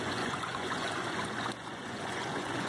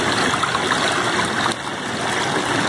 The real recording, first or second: second